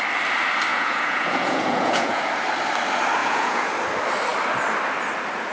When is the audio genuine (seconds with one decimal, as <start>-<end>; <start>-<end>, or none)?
0.0-0.7; 2.2-3.2; 3.7-5.5